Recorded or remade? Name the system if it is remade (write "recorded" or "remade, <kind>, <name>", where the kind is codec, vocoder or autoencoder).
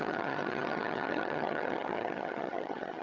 remade, vocoder, HiFi-GAN